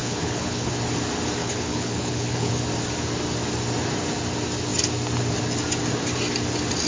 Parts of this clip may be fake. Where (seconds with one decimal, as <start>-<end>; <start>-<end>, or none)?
0.0-0.7; 1.4-2.5